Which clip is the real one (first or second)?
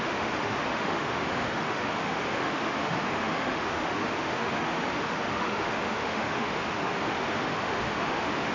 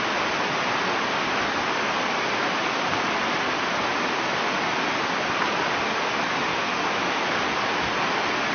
second